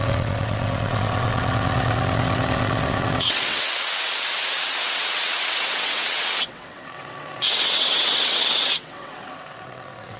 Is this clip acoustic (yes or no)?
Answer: no